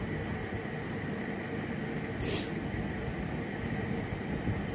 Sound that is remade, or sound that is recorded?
recorded